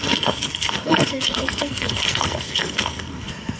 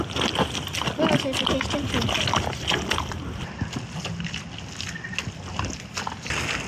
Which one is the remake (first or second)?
first